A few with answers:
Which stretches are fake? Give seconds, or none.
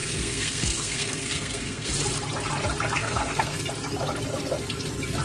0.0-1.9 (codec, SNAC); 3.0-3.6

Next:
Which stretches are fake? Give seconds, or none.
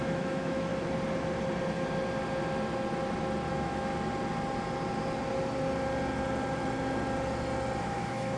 0.0-0.7 (autoencoder, DAC-VAE); 3.5-3.9; 7.8-8.4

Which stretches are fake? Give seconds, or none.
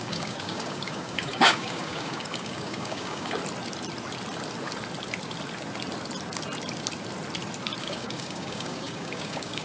0.0-3.4 (codec, DAC); 7.8-9.6